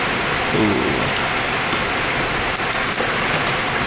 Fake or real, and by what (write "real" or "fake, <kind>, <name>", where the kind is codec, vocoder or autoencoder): real